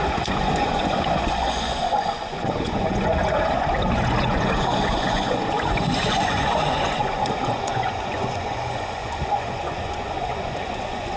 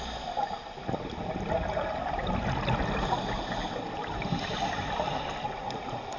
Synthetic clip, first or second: first